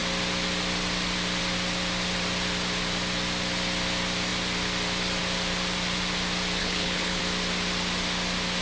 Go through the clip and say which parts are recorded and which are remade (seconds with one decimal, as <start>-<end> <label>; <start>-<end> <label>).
0.0-6.6 recorded; 6.6-7.2 remade; 7.2-8.6 recorded